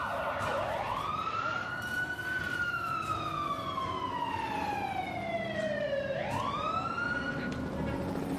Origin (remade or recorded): recorded